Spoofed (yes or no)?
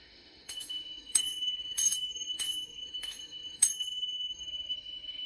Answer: yes